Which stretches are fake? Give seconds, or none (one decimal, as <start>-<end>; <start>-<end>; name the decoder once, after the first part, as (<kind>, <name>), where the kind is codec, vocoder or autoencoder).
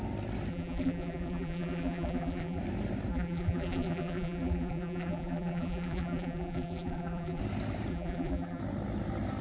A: 0.5-2.6 (vocoder, BigVGAN v2); 3.1-7.4; 7.9-8.6